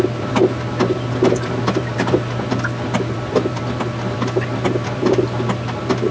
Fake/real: real